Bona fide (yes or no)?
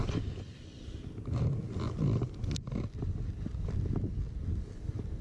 yes